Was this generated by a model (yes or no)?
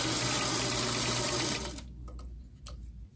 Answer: no